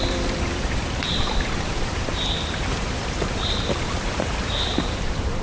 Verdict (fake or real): fake